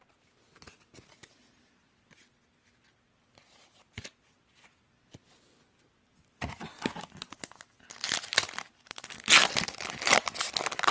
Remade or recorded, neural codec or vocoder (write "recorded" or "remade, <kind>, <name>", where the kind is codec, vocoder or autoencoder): recorded